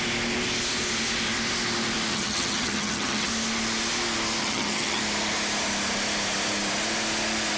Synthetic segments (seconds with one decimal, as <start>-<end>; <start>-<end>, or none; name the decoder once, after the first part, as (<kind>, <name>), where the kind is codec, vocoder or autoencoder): 2.1-3.3 (vocoder, HiFi-GAN); 4.4-5.0